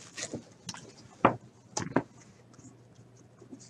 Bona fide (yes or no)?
yes